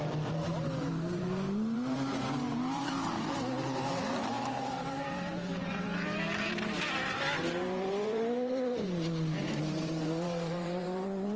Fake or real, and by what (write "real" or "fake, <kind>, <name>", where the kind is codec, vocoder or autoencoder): fake, vocoder, BigVGAN v2